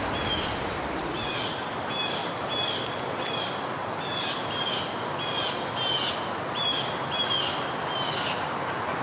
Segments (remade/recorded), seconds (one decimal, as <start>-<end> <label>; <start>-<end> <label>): 0.0-9.0 recorded